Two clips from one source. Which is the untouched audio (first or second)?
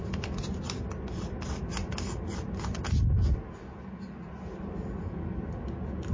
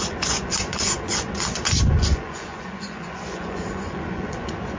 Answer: first